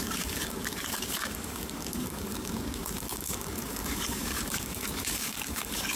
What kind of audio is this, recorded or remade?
remade